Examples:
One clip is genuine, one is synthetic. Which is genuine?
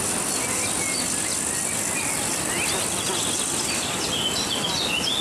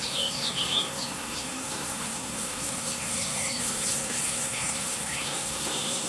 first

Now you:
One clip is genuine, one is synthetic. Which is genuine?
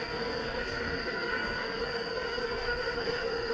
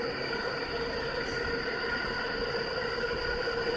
second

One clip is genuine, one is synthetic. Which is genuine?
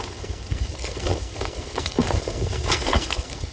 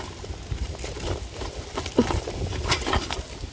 second